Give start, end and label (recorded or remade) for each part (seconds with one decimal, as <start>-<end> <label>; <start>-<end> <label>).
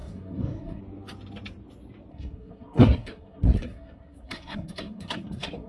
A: 0.0-0.8 remade; 0.8-2.1 recorded; 2.1-5.7 remade